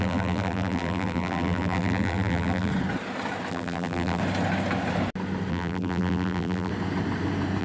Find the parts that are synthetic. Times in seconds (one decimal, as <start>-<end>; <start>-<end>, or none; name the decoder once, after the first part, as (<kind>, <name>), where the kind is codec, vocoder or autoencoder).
0.0-2.7 (vocoder, BigVGAN v2); 3.5-4.2; 5.5-6.7